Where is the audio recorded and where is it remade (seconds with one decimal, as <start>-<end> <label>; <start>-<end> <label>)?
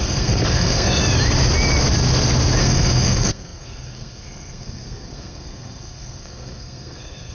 0.0-1.0 remade; 1.0-2.6 recorded; 2.6-7.3 remade